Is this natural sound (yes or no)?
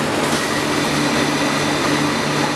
yes